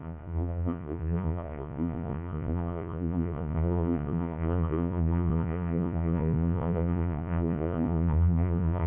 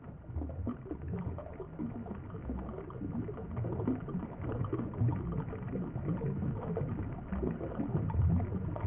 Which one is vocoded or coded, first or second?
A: first